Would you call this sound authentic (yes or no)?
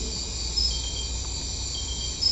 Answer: yes